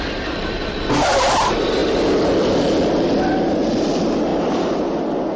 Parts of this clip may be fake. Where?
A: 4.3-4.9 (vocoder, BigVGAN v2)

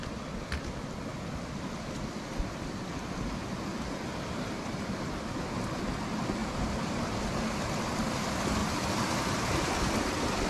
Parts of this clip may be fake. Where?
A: 4.1-5.0 (vocoder, BigVGAN v2); 6.4-7.4; 8.6-9.7

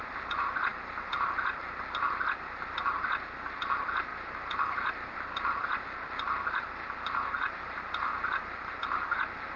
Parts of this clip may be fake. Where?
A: 0.7-1.6 (vocoder, BigVGAN v2); 4.1-5.8; 8.1-8.8

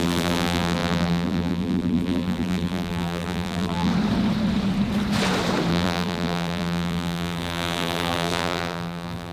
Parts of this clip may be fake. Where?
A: 0.0-3.9 (vocoder, BigVGAN v2); 5.7-9.3